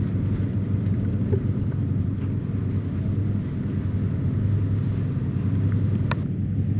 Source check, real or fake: real